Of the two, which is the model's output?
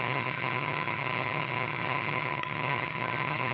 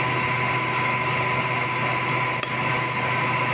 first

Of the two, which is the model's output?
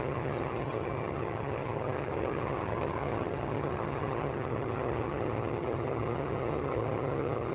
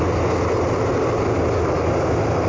first